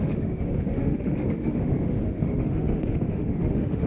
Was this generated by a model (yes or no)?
yes